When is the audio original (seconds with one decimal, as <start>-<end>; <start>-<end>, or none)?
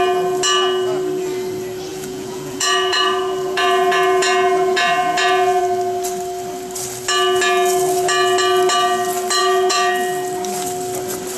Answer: 0.0-1.9; 5.6-9.4; 9.9-11.4